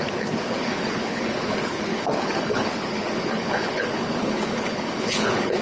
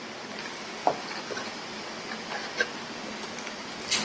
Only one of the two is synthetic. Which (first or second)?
first